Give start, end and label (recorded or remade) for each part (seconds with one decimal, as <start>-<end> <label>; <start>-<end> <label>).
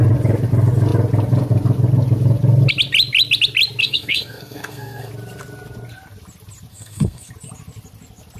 0.0-3.8 recorded; 3.8-5.1 remade; 5.1-6.7 recorded; 6.7-7.3 remade; 7.3-8.4 recorded